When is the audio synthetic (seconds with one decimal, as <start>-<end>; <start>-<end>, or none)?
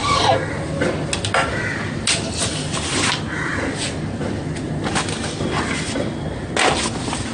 0.0-0.5